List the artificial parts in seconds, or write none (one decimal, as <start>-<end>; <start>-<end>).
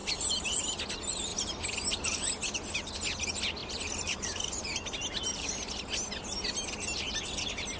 0.0-0.6; 1.3-2.3; 3.6-4.6